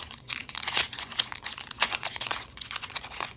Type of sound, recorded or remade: remade